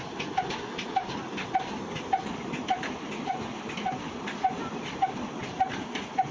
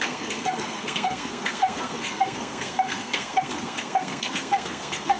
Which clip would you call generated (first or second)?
second